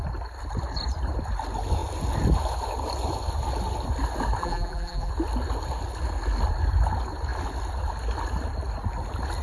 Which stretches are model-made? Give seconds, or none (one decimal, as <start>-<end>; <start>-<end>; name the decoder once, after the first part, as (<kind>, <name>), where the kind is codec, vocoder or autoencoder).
4.4-5.1 (vocoder, BigVGAN v2)